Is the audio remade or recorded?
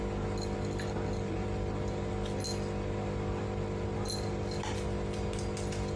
recorded